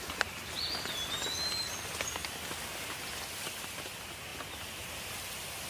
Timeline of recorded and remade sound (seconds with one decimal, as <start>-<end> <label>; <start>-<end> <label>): 0.0-5.7 recorded

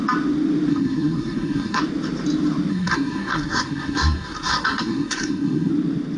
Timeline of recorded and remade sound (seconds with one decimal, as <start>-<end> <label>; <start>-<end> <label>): 0.0-0.7 recorded; 0.7-1.8 remade; 1.8-2.7 recorded; 2.7-5.7 remade; 5.7-6.2 recorded

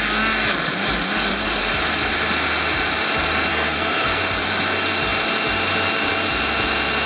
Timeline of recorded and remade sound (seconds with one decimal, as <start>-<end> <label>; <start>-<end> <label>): 0.0-3.5 recorded; 3.5-4.2 remade; 4.2-7.1 recorded

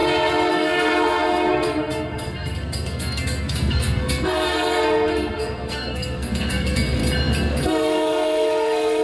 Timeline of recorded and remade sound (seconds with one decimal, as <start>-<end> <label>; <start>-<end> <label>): 0.0-0.5 recorded; 0.5-7.0 remade; 7.0-7.5 recorded; 7.5-9.0 remade

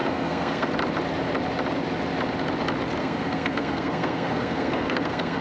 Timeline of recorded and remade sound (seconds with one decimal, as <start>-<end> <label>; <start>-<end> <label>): 0.0-0.7 remade; 0.7-3.0 recorded; 3.0-5.4 remade